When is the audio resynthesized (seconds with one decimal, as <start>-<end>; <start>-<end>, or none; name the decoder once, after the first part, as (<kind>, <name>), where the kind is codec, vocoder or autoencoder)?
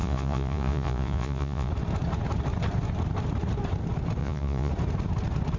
0.0-1.7 (vocoder, Vocos); 4.2-4.7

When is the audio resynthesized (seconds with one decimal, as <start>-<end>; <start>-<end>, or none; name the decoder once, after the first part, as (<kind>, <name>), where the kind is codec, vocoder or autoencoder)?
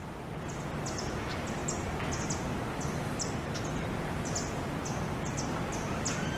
none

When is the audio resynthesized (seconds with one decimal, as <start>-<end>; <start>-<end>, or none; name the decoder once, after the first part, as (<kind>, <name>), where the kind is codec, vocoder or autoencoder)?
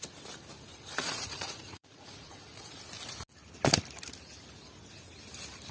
0.7-2.8 (vocoder, Vocos)